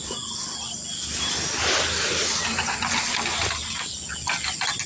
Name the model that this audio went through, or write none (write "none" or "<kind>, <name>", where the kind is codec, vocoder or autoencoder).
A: none